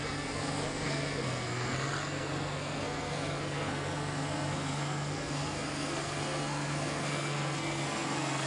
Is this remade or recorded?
remade